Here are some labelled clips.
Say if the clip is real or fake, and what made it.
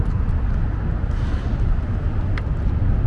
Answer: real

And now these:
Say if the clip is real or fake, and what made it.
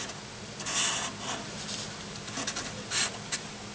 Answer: real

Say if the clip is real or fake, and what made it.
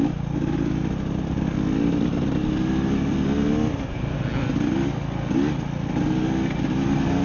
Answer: real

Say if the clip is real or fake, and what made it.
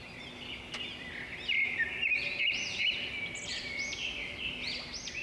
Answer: real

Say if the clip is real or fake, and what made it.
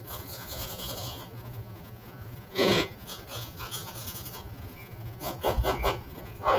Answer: fake, vocoder, Vocos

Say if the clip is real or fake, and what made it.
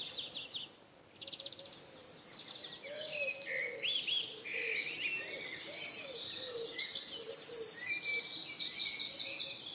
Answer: real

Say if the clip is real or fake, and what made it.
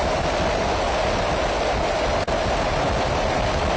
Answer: real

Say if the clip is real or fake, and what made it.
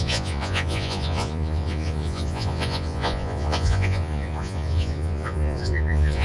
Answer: fake, vocoder, Vocos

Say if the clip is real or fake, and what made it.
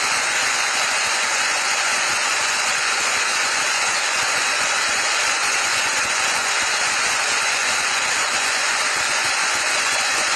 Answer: fake, vocoder, Vocos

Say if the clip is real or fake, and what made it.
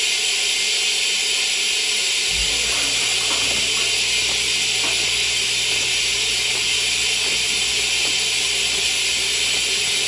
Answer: real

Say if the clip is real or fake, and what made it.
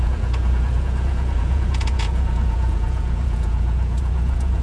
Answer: fake, vocoder, Vocos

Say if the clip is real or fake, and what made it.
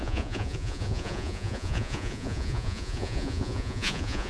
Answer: fake, vocoder, Vocos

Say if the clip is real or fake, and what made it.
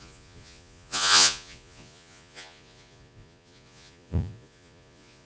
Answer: fake, vocoder, Vocos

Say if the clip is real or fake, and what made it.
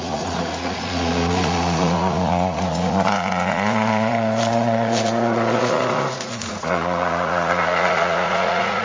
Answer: fake, vocoder, Vocos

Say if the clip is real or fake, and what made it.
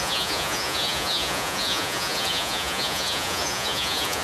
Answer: fake, vocoder, Vocos